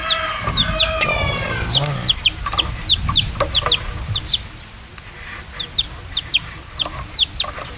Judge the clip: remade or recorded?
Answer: recorded